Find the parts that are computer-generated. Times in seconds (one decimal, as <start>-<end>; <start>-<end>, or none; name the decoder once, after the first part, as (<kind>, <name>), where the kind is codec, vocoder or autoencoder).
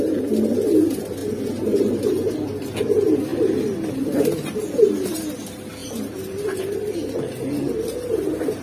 3.3-4.8 (vocoder, BigVGAN v2); 5.8-6.6